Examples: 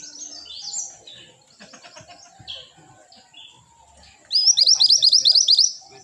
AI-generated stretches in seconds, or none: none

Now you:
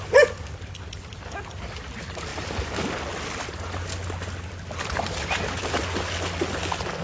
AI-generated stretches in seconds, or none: none

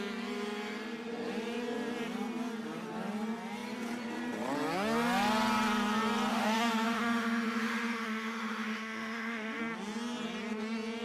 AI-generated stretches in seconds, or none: 6.3-9.6

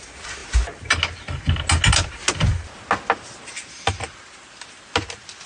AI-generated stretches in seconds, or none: none

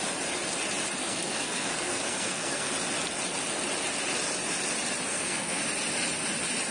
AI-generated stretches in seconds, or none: 1.0-2.7; 5.1-5.6